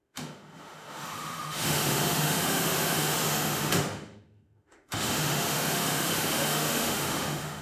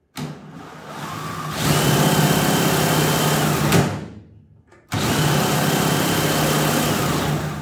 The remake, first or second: first